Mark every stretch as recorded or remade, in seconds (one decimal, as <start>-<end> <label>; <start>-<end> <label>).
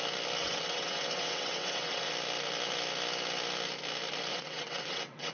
0.0-0.4 recorded; 0.4-2.1 remade; 2.1-4.3 recorded; 4.3-5.3 remade